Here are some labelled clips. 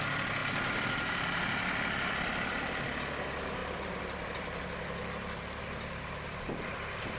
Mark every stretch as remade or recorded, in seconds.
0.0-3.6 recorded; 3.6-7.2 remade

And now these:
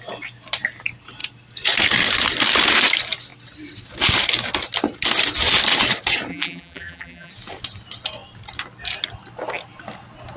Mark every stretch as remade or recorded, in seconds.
0.0-6.3 recorded; 6.3-7.3 remade; 7.3-10.4 recorded

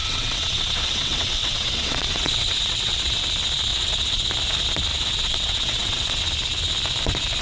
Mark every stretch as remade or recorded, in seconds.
0.0-3.2 remade; 3.2-3.7 recorded; 3.7-4.3 remade; 4.3-4.9 recorded; 4.9-6.2 remade; 6.2-7.4 recorded

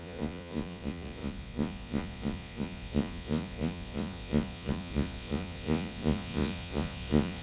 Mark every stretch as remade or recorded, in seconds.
0.0-7.4 remade

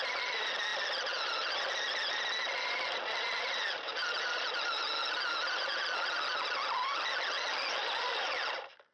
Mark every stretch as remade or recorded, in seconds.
0.0-8.9 recorded